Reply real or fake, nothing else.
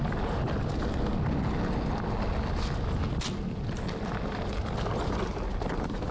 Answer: real